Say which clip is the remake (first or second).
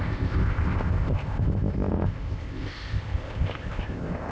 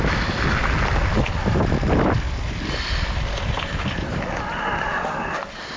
first